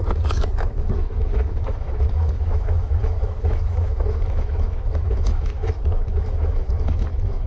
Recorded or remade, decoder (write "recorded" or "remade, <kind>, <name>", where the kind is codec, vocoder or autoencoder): remade, autoencoder, DAC-VAE